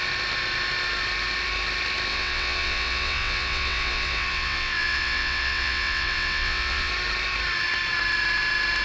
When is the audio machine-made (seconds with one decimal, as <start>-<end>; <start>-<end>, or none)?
2.1-6.9